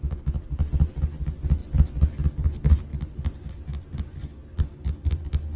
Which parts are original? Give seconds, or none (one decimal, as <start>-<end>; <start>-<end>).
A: 0.0-5.6